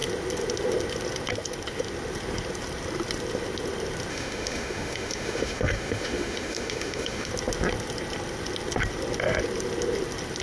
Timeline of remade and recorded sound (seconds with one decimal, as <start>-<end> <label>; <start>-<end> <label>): 0.0-4.1 recorded; 4.1-7.3 remade; 7.3-10.4 recorded